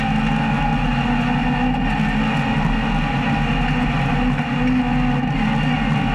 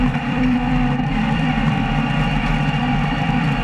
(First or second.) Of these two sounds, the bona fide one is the first